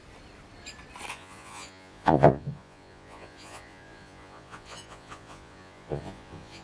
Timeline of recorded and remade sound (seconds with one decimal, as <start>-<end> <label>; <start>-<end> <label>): 0.0-1.1 recorded; 1.1-6.6 remade